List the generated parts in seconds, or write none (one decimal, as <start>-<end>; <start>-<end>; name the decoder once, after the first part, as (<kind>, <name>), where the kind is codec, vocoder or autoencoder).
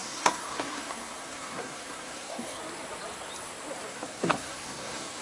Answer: 0.0-2.6 (codec, SNAC); 3.9-5.2